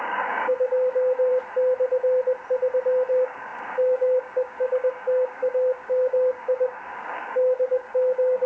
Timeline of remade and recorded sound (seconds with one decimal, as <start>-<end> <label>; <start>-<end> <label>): 0.0-1.3 remade; 1.3-3.1 recorded; 3.1-8.5 remade